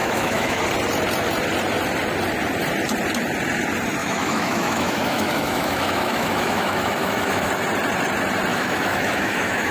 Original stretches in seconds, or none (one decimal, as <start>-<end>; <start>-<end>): 0.6-4.0; 7.5-8.5